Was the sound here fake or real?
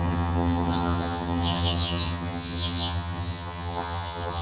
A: fake